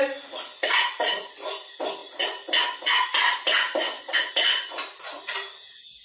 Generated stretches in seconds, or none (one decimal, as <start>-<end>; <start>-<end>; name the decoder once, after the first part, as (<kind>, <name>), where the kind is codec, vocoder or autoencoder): none